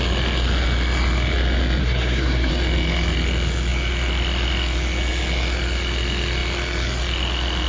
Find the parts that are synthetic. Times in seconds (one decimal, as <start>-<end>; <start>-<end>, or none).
1.8-2.5